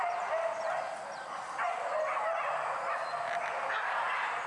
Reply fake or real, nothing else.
real